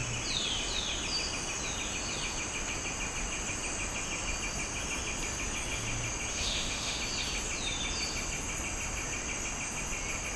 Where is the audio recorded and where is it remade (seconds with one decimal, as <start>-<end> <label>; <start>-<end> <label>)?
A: 0.0-6.3 recorded; 6.3-7.0 remade; 7.0-10.4 recorded